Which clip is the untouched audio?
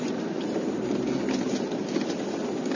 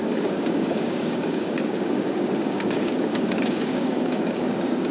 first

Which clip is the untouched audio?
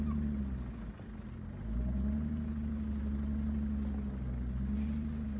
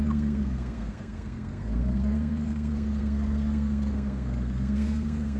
first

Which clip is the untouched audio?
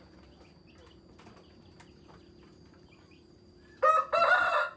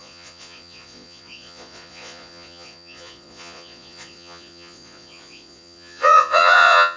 first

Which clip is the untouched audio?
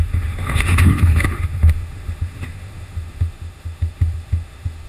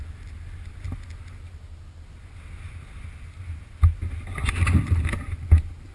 second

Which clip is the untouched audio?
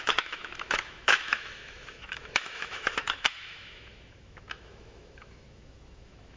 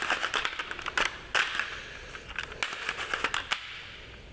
second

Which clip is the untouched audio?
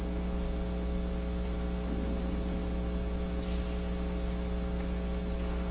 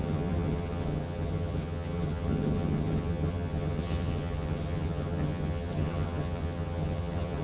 first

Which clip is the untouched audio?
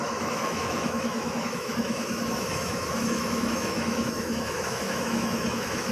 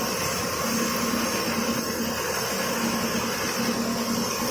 second